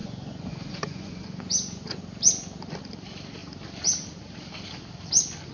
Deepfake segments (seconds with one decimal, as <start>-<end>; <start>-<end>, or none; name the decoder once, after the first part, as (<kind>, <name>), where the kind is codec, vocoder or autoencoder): 0.0-2.0 (vocoder, Vocos)